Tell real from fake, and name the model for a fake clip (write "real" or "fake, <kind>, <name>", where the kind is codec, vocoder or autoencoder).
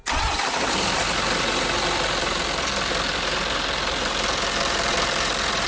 real